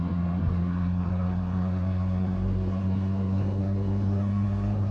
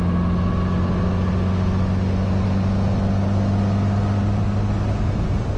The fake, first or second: first